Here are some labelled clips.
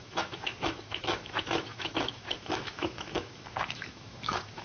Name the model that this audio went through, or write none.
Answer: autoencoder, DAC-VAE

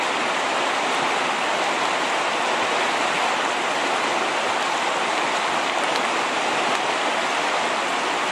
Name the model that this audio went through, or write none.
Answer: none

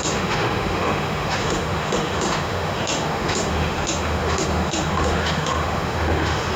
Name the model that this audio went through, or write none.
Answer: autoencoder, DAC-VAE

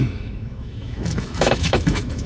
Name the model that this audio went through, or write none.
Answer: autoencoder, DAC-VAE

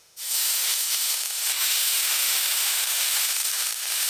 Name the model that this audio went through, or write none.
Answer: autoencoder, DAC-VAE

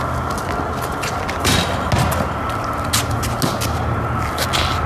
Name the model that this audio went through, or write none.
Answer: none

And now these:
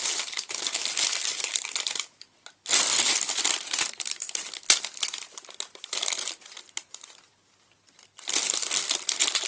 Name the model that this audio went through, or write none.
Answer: none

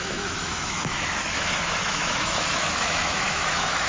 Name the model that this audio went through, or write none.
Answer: autoencoder, DAC-VAE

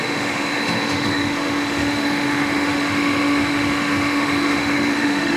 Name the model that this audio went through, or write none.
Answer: autoencoder, DAC-VAE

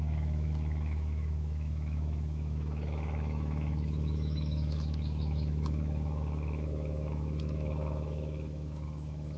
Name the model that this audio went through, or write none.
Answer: autoencoder, DAC-VAE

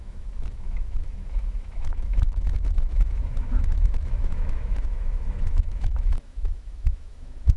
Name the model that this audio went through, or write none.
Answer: autoencoder, DAC-VAE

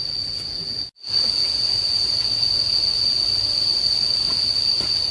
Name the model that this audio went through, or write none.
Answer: none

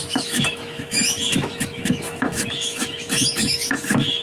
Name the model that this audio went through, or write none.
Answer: autoencoder, DAC-VAE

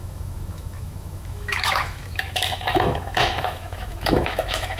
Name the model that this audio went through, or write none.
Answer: autoencoder, DAC-VAE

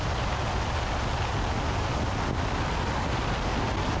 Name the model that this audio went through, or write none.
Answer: none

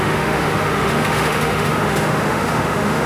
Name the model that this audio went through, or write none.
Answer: autoencoder, DAC-VAE